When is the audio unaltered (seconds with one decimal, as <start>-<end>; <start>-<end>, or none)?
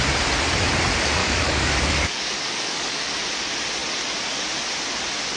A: 0.0-1.2; 3.1-5.4